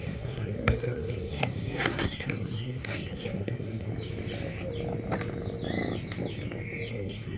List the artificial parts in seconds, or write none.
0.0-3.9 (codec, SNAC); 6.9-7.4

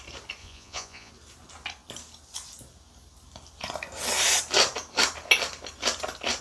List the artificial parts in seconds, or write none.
0.4-1.1 (vocoder, Vocos)

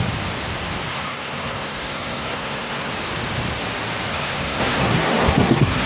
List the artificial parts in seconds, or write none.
0.9-2.9 (codec, SNAC); 4.1-5.9